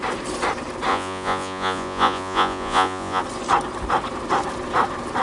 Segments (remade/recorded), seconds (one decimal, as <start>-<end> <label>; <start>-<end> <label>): 0.0-0.9 recorded; 0.9-3.2 remade; 3.2-5.2 recorded